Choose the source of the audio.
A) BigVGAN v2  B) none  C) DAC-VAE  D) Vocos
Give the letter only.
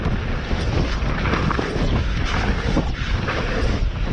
B